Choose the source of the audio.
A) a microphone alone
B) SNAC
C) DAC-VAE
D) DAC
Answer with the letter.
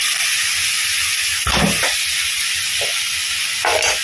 A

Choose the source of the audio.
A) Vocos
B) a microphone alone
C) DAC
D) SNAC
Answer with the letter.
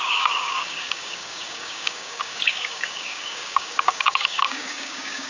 C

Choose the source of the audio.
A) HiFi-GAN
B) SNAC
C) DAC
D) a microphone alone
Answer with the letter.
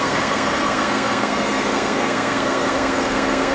B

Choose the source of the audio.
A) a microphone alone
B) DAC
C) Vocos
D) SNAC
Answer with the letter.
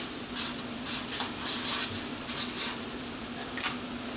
A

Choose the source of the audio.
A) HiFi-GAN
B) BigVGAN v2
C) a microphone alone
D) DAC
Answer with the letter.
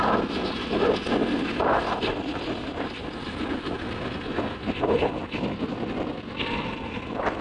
C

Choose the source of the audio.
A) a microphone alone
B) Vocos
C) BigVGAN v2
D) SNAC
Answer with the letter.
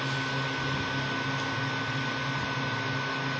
A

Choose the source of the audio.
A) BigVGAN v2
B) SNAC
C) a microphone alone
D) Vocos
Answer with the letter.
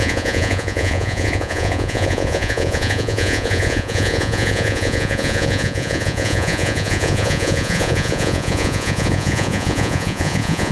D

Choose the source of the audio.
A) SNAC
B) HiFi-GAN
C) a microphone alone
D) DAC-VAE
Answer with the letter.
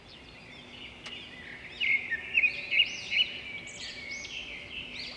C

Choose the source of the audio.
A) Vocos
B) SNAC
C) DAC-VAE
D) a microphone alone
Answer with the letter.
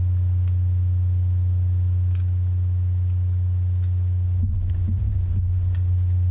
D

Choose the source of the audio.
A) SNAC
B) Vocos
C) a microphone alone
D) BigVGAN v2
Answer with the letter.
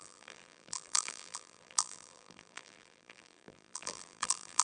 D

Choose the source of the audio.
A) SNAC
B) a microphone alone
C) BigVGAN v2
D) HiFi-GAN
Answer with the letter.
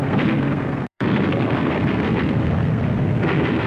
A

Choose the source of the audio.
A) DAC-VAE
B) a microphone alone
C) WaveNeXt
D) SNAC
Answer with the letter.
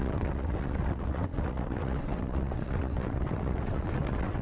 C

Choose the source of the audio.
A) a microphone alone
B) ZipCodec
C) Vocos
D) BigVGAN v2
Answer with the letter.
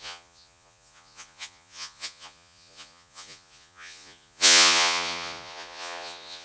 C